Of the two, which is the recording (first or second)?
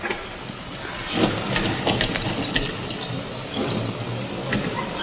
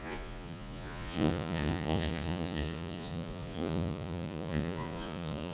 first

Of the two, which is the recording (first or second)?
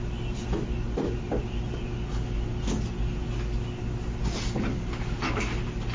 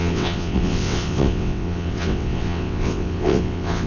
first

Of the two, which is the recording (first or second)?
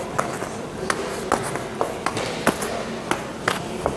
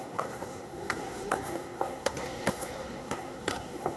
first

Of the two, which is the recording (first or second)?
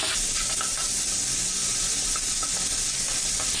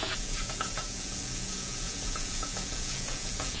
first